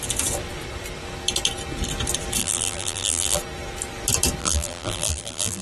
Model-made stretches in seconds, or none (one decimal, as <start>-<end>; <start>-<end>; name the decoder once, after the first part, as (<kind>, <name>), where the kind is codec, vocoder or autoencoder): 2.4-3.4 (vocoder, BigVGAN v2); 4.4-5.6